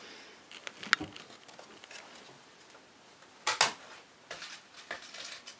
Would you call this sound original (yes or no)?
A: yes